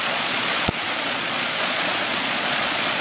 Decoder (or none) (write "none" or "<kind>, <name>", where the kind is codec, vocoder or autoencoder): vocoder, Vocos